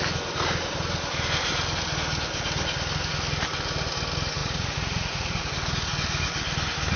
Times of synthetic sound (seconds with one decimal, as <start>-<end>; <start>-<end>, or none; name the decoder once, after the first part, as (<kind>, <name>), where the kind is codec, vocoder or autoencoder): 4.4-5.5 (vocoder, Vocos)